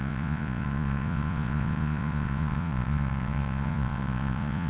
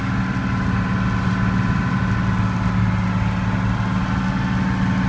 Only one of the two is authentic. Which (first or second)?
second